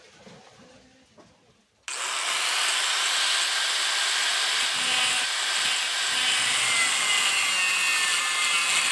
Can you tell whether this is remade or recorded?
recorded